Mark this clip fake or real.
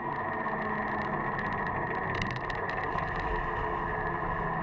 real